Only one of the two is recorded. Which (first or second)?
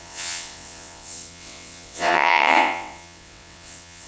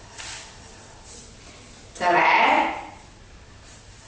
second